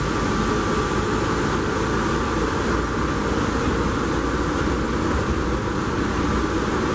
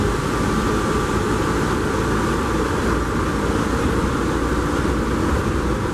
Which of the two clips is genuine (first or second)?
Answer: first